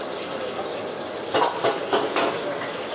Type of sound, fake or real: real